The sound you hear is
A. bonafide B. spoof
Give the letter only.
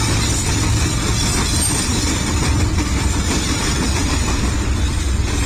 B